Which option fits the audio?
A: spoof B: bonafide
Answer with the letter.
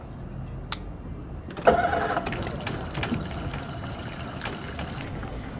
B